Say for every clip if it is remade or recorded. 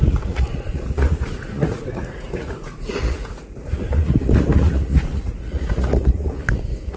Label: remade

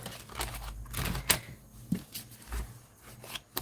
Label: recorded